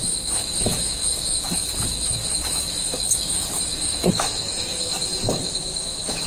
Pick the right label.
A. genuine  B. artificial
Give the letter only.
B